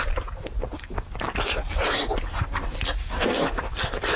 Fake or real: real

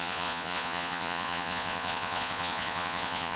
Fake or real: fake